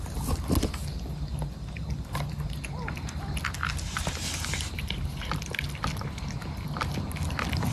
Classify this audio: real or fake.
real